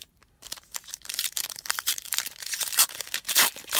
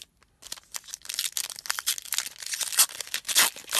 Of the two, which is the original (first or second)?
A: second